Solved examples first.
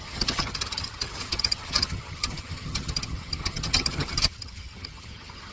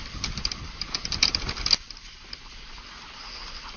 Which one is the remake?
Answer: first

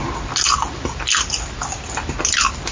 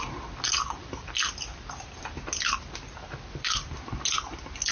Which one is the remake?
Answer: second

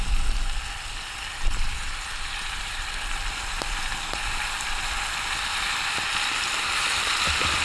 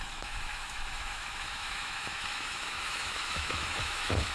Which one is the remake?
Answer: second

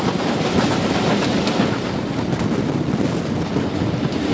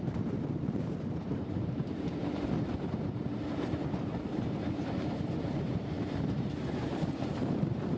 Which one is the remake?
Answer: second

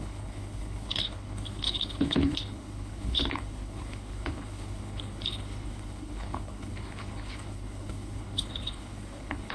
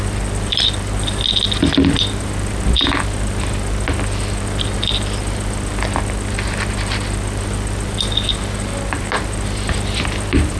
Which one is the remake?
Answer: first